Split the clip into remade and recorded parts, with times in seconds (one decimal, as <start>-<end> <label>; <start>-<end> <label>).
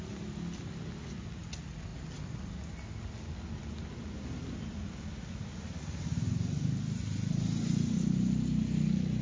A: 0.0-9.2 recorded